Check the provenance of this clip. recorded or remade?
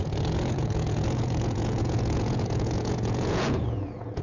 remade